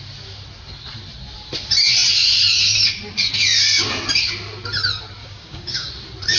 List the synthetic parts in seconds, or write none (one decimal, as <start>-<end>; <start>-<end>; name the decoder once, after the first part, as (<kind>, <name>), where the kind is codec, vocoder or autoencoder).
5.2-5.9 (codec, DAC)